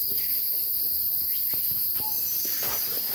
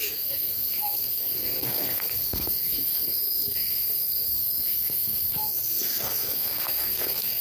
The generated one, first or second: second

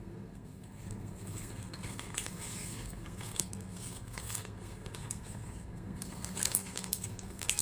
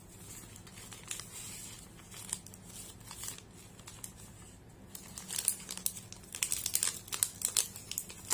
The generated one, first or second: first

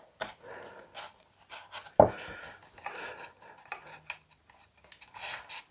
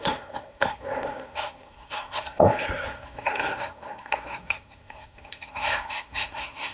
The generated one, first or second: second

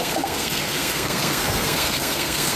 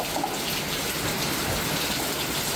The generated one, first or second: first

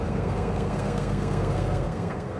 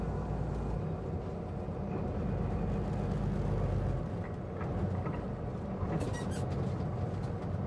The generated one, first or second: first